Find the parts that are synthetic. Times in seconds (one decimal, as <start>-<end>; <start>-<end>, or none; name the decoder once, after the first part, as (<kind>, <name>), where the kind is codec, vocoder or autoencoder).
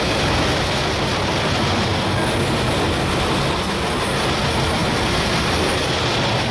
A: 4.8-5.7 (vocoder, BigVGAN v2)